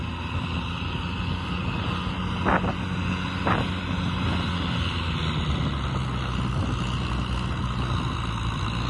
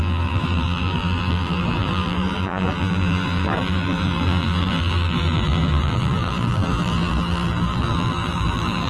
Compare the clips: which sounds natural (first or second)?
first